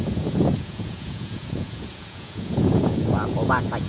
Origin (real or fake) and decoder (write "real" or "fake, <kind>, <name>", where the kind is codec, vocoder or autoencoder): fake, vocoder, Vocos